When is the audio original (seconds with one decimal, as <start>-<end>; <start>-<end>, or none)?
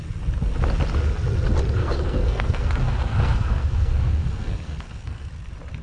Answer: 0.0-1.8; 5.3-5.8